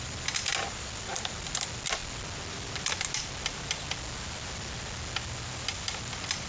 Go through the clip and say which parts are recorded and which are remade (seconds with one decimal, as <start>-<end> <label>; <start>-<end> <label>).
0.0-6.5 recorded